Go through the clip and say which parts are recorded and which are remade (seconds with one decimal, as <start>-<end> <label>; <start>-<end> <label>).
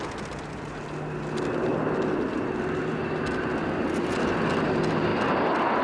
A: 0.0-5.8 recorded